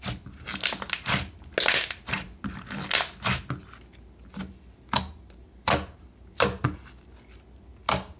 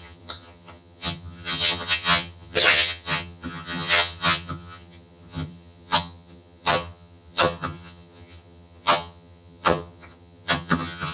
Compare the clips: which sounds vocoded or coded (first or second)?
second